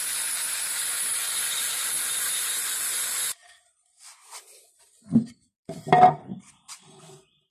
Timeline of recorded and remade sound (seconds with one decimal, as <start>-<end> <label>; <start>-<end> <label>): 0.0-7.5 recorded